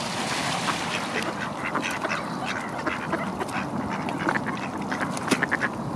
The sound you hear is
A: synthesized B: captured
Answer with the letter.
B